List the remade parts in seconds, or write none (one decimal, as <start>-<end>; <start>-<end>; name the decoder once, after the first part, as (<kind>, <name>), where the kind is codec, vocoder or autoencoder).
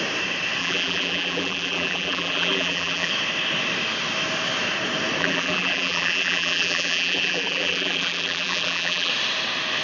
0.6-3.1 (vocoder, BigVGAN v2); 5.2-9.1